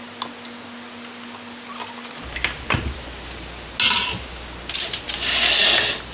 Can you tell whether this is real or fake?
real